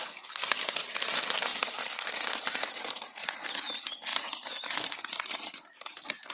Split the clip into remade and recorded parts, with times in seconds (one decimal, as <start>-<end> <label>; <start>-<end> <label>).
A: 0.0-4.1 recorded; 4.1-6.3 remade

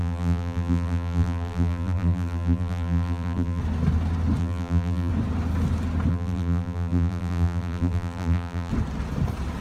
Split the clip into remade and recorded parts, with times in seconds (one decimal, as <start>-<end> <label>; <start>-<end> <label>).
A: 0.0-3.6 remade; 3.6-4.4 recorded; 4.4-5.1 remade; 5.1-6.1 recorded; 6.1-8.7 remade; 8.7-9.6 recorded

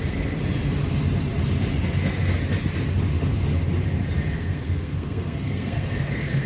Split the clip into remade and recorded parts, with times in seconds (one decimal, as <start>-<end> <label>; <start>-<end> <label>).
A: 0.0-0.4 remade; 0.4-4.3 recorded; 4.3-6.5 remade

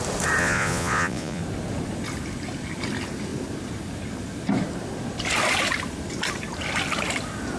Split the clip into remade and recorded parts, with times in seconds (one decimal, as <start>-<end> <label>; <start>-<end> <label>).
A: 0.0-0.4 recorded; 0.4-1.4 remade; 1.4-7.6 recorded

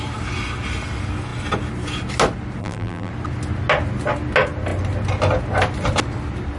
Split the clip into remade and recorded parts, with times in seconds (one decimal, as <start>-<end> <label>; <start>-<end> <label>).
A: 0.0-2.6 recorded; 2.6-3.1 remade; 3.1-6.6 recorded

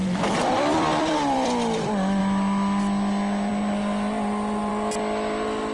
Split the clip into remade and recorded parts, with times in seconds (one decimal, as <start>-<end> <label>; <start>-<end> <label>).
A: 0.0-2.2 remade; 2.2-5.7 recorded

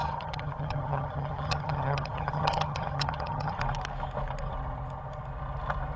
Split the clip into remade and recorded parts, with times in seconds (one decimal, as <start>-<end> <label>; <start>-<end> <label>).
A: 0.0-3.6 remade; 3.6-6.0 recorded

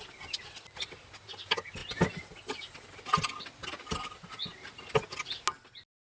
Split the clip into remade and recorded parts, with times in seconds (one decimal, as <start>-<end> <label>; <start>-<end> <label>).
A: 0.0-6.1 recorded